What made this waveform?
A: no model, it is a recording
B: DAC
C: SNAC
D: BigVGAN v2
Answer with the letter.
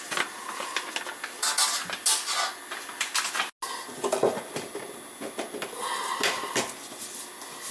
A